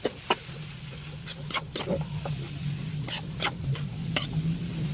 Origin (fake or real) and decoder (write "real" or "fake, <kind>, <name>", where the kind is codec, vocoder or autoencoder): real